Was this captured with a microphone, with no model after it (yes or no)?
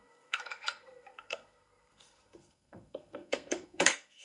no